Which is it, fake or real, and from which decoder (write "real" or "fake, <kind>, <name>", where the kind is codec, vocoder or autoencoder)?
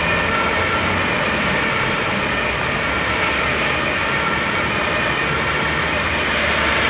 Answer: real